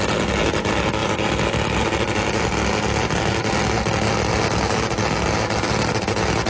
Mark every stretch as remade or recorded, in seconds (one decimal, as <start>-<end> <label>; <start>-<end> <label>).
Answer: 0.0-6.5 recorded